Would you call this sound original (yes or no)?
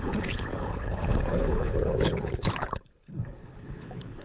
no